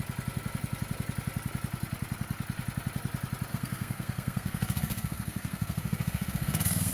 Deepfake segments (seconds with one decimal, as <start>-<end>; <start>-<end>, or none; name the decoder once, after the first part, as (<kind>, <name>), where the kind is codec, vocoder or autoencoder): 3.5-6.9 (codec, SNAC)